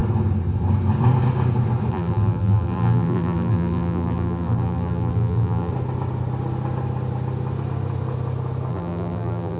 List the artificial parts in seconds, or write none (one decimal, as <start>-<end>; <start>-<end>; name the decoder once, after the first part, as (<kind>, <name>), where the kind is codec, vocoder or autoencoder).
1.9-5.7 (vocoder, BigVGAN v2); 8.7-9.6